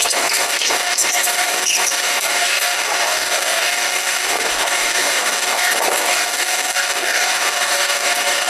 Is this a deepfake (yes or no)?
yes